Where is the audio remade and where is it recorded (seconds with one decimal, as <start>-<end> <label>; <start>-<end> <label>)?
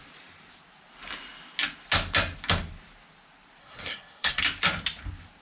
0.0-3.6 recorded; 3.6-4.4 remade; 4.4-5.4 recorded